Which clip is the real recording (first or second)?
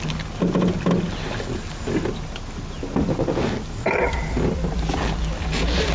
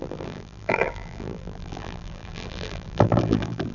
first